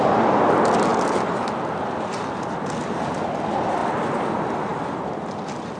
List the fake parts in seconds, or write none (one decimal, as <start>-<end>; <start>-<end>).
0.9-2.9

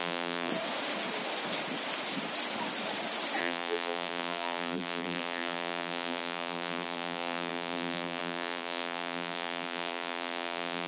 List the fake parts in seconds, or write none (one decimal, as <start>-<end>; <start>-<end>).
0.0-0.5; 3.4-10.9

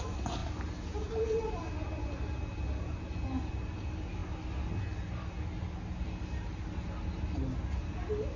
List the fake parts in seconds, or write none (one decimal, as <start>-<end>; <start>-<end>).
none

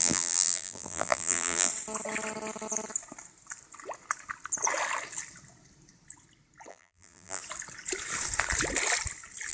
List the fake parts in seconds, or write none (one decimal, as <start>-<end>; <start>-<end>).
0.0-1.7; 6.7-7.4